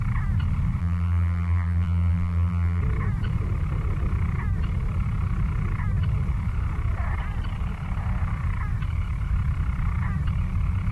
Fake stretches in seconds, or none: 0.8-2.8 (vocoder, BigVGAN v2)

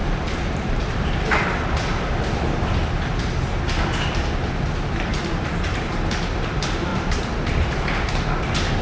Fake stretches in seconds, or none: 0.0-1.2 (vocoder, BigVGAN v2); 5.1-5.9; 6.9-8.1

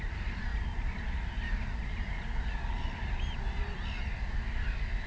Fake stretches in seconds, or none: none

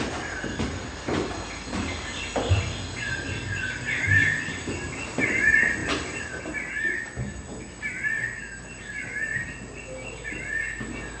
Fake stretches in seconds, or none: none

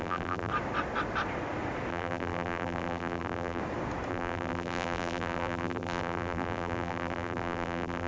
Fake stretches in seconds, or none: 0.0-0.5 (vocoder, BigVGAN v2); 1.9-3.6; 4.1-8.1

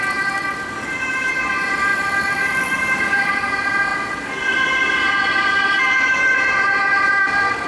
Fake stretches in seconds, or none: 1.9-3.3 (vocoder, BigVGAN v2)